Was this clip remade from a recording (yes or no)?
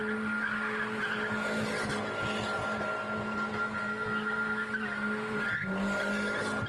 no